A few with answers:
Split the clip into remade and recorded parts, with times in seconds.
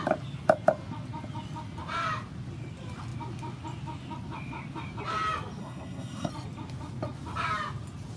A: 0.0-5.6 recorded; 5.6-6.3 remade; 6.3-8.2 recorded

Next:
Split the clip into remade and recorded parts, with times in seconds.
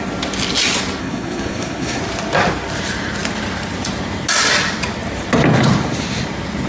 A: 0.0-1.0 recorded; 1.0-2.0 remade; 2.0-6.7 recorded